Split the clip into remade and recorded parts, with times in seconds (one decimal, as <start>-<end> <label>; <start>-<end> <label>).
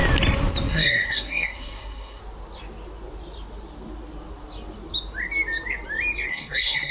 0.0-0.7 recorded; 0.7-2.2 remade; 2.2-6.3 recorded; 6.3-6.9 remade